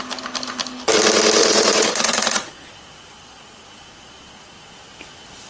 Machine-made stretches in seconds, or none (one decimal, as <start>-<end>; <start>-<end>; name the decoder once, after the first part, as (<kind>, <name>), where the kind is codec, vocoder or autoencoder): 1.4-4.7 (vocoder, Vocos)